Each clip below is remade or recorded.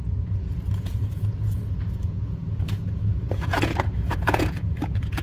remade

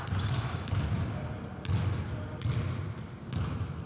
recorded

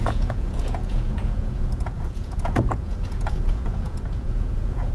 remade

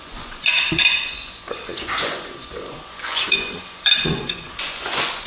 remade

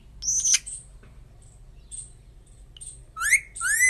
recorded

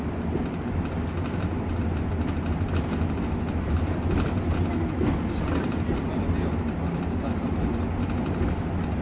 recorded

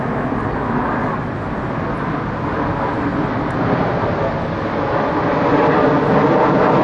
recorded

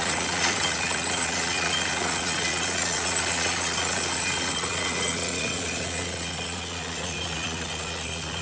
remade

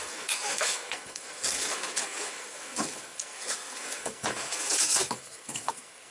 remade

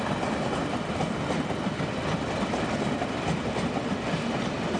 recorded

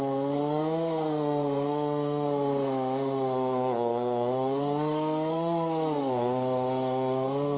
remade